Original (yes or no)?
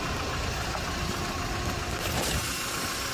yes